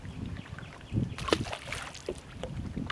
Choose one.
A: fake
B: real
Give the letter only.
B